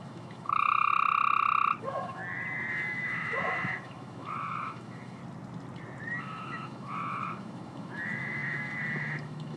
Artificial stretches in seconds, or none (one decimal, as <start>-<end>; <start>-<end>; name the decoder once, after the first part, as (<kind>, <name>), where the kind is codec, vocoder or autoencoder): 0.0-0.9 (autoencoder, DAC-VAE); 1.8-2.2; 2.7-5.2; 6.2-9.6